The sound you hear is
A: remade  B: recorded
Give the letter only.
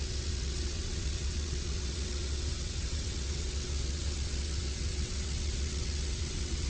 A